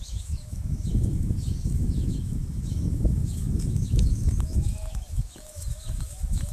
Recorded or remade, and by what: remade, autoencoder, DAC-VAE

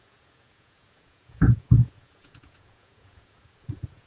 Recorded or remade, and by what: remade, vocoder, Vocos